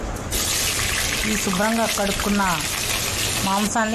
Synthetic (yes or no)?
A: no